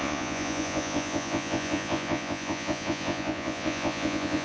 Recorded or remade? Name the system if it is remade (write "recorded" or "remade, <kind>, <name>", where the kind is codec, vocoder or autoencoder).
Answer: remade, vocoder, Vocos